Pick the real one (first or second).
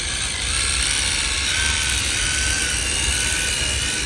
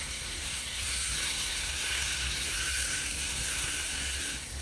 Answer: first